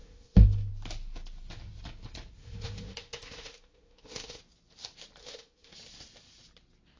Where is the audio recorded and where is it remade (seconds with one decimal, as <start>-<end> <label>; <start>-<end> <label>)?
0.0-0.7 remade; 0.7-2.4 recorded; 2.4-4.4 remade; 4.4-5.2 recorded; 5.2-5.7 remade; 5.7-7.0 recorded

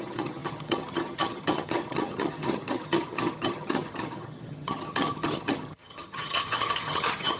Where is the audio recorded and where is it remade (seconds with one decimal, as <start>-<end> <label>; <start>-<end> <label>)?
0.0-7.4 remade

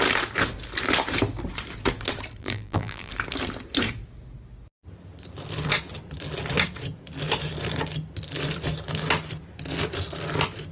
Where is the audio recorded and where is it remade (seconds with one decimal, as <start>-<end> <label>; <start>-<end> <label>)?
0.0-2.4 recorded; 2.4-3.1 remade; 3.1-10.7 recorded

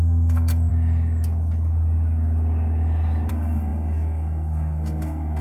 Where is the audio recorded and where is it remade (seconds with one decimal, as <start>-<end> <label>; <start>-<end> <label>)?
0.0-0.7 remade; 0.7-3.3 recorded; 3.3-5.4 remade